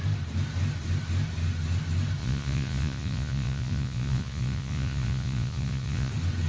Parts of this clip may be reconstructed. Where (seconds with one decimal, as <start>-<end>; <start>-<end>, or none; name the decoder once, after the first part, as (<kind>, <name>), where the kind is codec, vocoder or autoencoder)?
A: 2.2-6.1 (vocoder, Vocos)

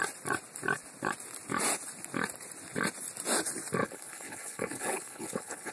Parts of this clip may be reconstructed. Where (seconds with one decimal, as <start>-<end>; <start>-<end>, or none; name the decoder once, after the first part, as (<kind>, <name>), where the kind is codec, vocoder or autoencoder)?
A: 3.8-5.7 (codec, HILCodec)

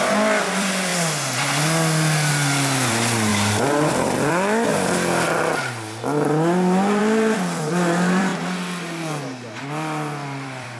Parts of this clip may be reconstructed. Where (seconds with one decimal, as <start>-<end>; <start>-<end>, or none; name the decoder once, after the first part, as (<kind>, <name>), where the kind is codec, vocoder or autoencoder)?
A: 0.0-0.9 (vocoder, BigVGAN v2); 2.3-4.7; 7.0-8.3; 9.6-10.8

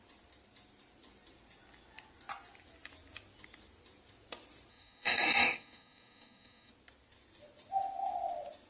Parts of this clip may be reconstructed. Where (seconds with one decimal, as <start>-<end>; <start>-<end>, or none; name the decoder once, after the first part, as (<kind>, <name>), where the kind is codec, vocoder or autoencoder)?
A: 4.7-6.7 (codec, DAC)

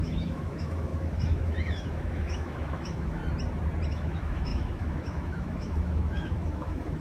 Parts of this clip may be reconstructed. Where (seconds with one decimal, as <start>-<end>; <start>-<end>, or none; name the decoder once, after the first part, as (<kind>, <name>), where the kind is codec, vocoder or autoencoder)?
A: 0.0-3.2 (autoencoder, DAC-VAE); 3.9-7.0

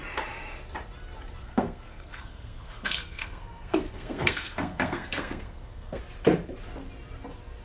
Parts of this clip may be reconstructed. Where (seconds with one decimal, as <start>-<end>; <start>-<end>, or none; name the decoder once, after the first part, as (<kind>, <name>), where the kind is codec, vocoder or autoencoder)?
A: 1.4-6.0 (codec, SNAC)